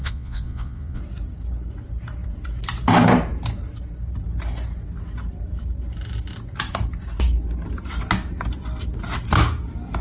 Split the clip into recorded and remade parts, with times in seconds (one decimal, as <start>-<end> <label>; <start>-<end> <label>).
0.0-1.0 remade; 1.0-10.0 recorded